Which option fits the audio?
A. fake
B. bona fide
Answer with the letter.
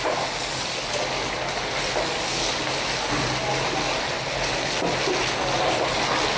B